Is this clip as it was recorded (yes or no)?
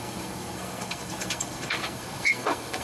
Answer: no